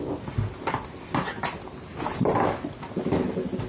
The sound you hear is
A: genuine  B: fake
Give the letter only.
A